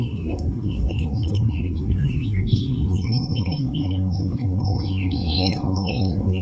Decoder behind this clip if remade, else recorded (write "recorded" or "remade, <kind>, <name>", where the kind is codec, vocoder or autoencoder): remade, codec, SNAC